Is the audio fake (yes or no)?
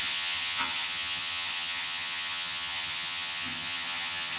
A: yes